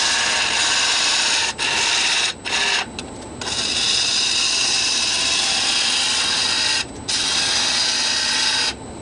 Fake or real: real